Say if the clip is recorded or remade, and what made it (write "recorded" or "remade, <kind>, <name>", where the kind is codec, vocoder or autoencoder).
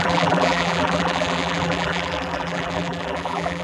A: remade, vocoder, BigVGAN v2